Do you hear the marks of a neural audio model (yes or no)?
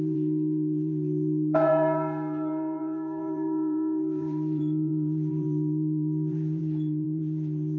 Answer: yes